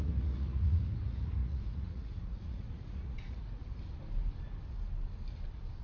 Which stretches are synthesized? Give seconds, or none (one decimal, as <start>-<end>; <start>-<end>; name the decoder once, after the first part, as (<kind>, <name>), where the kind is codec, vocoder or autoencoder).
0.0-3.6 (vocoder, Vocos)